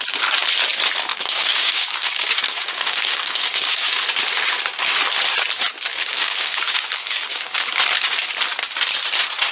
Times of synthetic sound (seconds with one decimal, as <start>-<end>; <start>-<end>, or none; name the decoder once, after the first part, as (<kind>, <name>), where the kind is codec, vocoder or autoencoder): 1.1-4.0 (codec, DAC); 5.9-7.7